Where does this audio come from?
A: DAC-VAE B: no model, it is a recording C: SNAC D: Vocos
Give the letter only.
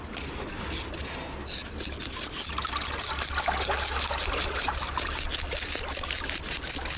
B